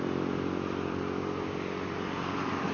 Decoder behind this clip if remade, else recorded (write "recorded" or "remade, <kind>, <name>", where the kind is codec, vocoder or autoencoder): recorded